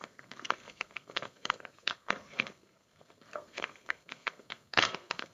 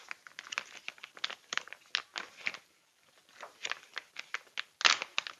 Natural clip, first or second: second